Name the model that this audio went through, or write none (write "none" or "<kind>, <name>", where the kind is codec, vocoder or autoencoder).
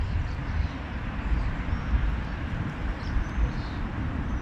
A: vocoder, BigVGAN v2